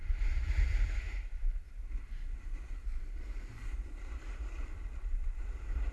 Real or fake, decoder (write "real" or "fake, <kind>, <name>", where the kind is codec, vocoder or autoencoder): fake, vocoder, BigVGAN v2